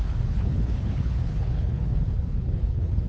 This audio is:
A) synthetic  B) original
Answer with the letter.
A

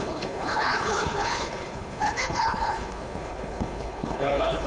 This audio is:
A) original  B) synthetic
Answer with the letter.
B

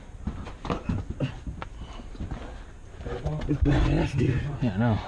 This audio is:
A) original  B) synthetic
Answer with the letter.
A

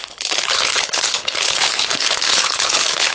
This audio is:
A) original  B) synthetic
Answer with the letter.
B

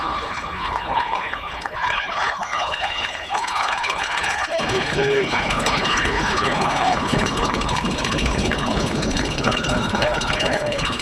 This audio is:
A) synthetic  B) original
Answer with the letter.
A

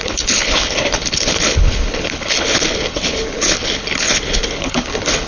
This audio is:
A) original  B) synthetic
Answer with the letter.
B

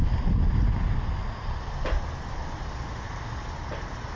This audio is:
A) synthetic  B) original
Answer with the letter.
B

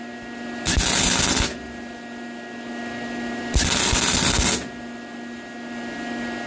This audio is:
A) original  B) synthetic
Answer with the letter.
A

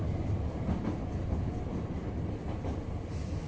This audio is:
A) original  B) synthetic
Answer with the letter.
A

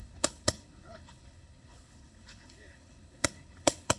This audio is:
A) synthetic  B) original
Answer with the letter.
A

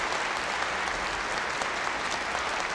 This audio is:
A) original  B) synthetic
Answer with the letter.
A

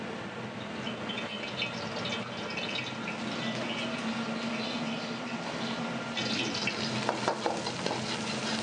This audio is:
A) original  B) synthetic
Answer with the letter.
A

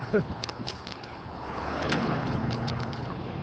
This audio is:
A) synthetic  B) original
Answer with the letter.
A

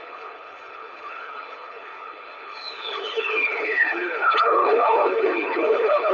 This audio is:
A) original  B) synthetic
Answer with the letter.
B